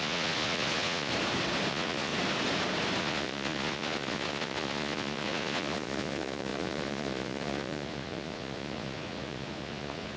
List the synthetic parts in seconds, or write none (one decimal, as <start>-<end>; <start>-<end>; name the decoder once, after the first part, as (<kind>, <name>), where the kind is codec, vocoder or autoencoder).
0.0-1.1 (vocoder, Vocos); 1.7-2.1; 3.0-10.2